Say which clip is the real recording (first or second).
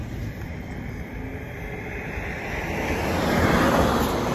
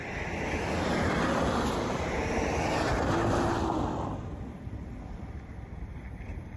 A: first